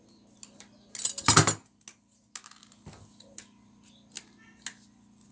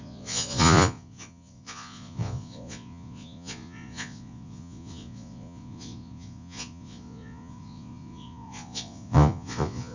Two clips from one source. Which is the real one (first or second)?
first